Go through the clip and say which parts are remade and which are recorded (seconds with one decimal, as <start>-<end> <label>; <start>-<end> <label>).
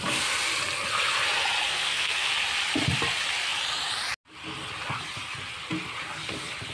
0.0-1.7 recorded; 1.7-2.3 remade; 2.3-6.7 recorded